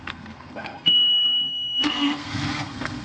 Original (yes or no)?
no